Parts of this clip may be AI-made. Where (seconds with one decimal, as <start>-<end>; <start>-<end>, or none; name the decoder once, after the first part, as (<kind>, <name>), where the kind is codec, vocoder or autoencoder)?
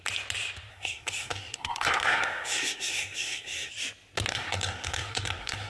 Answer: 0.7-3.7 (codec, SNAC); 4.3-5.7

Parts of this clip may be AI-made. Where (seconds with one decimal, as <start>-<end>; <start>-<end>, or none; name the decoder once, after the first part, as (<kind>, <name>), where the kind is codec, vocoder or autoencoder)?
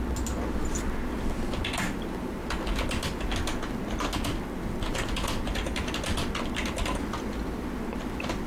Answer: none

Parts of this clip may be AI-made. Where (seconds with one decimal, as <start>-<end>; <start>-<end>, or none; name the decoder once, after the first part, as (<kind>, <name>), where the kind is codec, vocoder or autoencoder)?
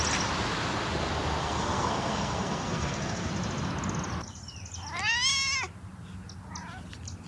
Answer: 1.4-3.3 (codec, SNAC)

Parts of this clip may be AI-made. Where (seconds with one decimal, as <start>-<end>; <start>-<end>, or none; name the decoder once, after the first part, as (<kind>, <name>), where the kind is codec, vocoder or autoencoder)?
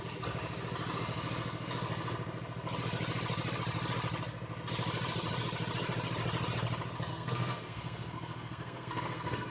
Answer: 7.1-9.5 (codec, SNAC)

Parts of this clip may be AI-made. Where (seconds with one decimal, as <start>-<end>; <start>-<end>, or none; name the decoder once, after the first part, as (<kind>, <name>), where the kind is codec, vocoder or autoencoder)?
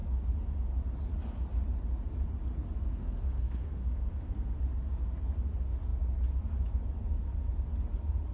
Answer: 2.9-4.6 (codec, SNAC)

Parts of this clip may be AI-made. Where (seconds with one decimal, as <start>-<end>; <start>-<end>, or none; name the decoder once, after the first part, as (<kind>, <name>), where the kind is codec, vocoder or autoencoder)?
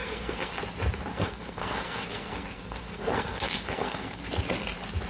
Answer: 0.0-0.6 (codec, SNAC); 1.1-4.2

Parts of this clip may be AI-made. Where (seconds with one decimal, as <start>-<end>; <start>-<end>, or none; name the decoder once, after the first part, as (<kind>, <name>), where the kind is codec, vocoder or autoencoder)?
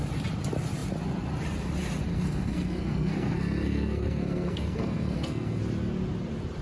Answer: 2.1-5.6 (codec, SNAC)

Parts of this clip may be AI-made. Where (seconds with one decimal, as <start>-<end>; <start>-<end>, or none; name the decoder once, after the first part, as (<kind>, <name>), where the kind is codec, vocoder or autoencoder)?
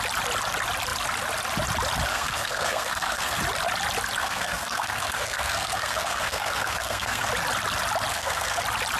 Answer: 2.1-3.4 (codec, SNAC); 4.2-7.3; 8.1-8.6